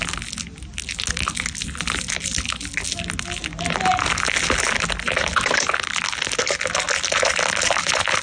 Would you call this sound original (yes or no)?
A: yes